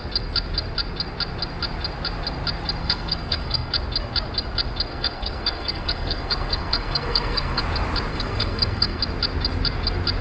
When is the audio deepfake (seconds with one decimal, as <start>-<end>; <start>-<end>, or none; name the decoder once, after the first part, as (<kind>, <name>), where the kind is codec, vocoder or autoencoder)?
2.8-3.7 (codec, SNAC); 4.9-7.6; 8.1-9.0